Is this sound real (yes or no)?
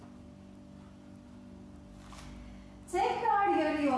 yes